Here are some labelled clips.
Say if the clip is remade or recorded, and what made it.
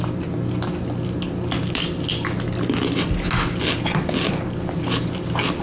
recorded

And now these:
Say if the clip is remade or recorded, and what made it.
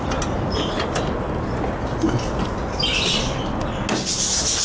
recorded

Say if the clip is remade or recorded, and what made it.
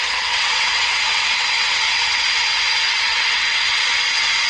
remade, vocoder, WaveNeXt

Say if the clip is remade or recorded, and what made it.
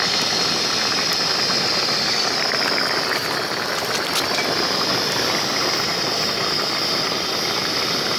recorded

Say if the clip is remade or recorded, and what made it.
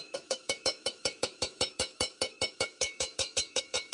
remade, autoencoder, DAC-VAE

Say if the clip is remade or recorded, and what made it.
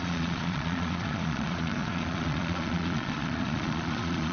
remade, vocoder, Vocos